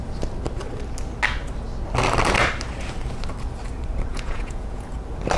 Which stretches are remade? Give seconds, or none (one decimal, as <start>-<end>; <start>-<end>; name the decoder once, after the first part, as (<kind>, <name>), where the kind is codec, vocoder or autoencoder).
4.1-4.9 (vocoder, Vocos)